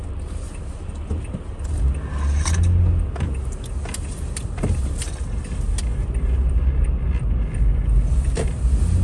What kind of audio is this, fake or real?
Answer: real